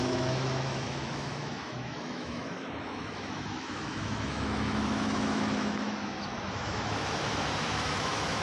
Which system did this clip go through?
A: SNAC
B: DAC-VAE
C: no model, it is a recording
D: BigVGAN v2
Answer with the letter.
B